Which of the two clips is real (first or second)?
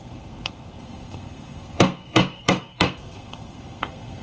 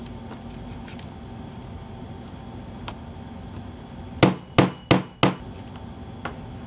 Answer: second